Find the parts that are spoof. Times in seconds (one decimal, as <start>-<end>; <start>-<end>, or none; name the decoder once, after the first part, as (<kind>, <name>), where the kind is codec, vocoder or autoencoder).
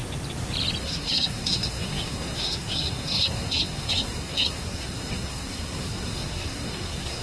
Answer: 0.8-7.2 (codec, SNAC)